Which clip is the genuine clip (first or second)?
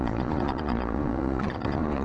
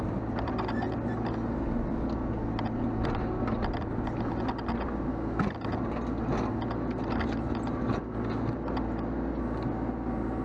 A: second